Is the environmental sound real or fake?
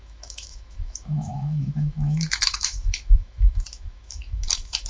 fake